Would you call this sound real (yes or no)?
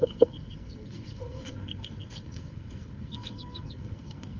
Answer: no